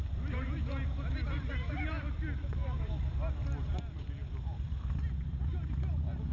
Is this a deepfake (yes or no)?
no